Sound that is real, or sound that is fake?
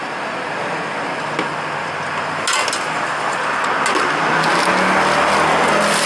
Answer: real